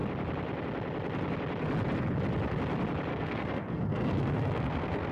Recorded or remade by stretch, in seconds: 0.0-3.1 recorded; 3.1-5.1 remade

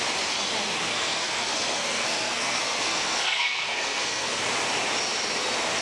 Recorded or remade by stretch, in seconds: 0.0-0.9 recorded; 0.9-4.4 remade; 4.4-5.8 recorded

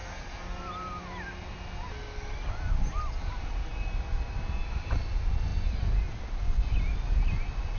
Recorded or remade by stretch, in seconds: 0.0-7.8 recorded